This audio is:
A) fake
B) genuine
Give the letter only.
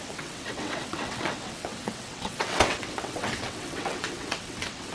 A